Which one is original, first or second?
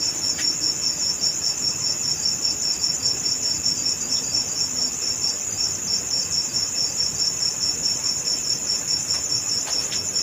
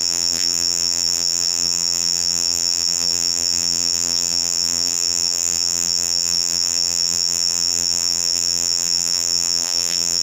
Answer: first